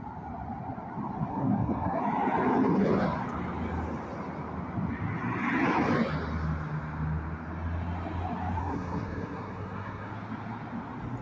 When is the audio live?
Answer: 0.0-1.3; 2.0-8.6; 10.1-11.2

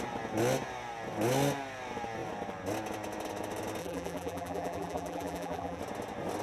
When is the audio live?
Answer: 0.0-3.8; 5.8-6.4